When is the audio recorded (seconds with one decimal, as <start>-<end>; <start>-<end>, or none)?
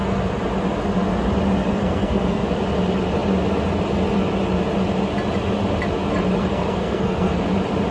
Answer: 0.0-1.8; 2.4-6.4; 7.4-7.9